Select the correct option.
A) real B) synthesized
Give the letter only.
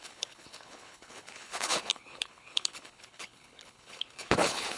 B